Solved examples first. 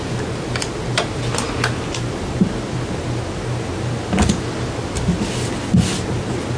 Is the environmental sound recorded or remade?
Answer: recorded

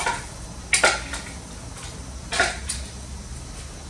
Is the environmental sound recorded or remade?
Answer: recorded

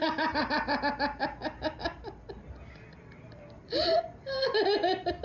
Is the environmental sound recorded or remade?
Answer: recorded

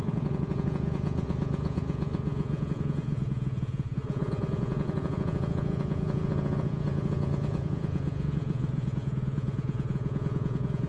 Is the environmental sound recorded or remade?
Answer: remade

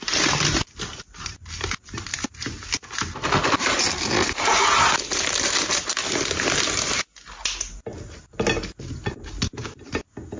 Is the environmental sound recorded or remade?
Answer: recorded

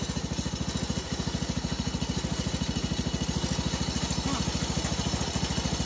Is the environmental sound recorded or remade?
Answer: recorded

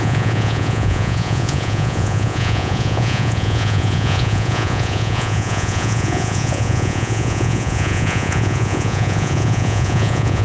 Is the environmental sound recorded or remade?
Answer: remade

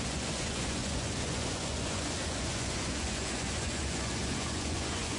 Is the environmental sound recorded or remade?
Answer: remade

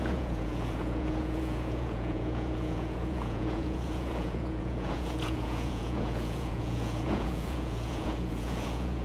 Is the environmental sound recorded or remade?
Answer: remade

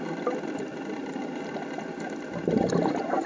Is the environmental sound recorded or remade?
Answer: recorded